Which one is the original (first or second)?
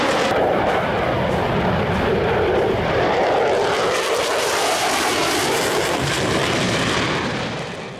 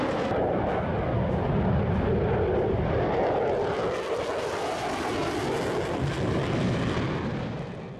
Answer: second